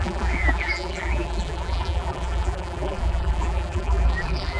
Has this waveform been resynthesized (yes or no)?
yes